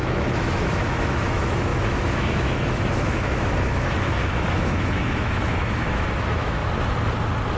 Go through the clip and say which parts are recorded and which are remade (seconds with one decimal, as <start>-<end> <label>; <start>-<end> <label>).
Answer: 0.0-6.6 remade; 6.6-7.6 recorded

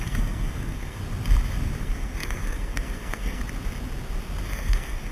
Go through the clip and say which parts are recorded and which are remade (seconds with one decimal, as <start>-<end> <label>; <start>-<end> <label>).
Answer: 0.0-1.0 remade; 1.0-1.8 recorded; 1.8-3.4 remade; 3.4-4.5 recorded; 4.5-5.1 remade